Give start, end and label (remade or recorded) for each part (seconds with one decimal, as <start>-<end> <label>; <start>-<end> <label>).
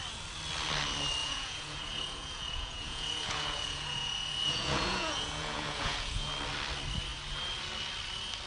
0.0-1.2 recorded; 1.2-6.3 remade; 6.3-8.5 recorded